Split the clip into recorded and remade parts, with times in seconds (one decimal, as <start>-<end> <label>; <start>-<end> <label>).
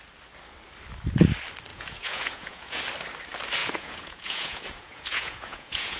0.0-1.7 recorded; 1.7-2.8 remade; 2.8-3.6 recorded; 3.6-6.0 remade